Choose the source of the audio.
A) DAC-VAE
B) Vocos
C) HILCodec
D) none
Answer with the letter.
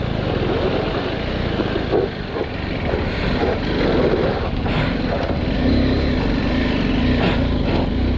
D